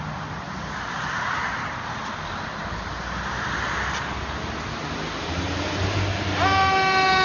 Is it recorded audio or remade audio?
recorded